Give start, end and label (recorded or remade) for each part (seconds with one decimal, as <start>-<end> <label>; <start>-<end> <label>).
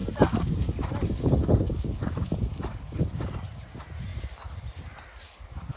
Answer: 0.0-5.8 recorded